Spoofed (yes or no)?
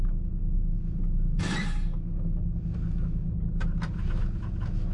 no